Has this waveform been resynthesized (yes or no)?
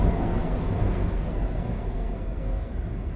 yes